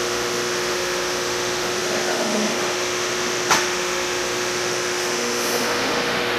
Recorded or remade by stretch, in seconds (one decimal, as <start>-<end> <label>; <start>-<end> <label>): 0.0-6.4 remade